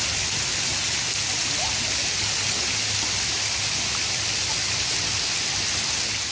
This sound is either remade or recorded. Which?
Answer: recorded